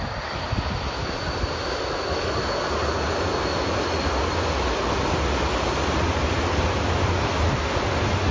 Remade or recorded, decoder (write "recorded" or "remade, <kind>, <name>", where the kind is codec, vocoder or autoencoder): recorded